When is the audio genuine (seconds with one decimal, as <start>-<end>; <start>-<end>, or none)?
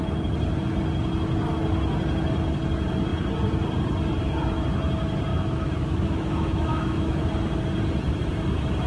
0.0-5.3; 7.3-8.9